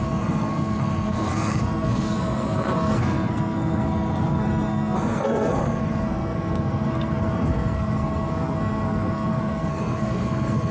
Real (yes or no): no